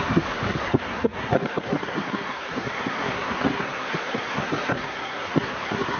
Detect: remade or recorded remade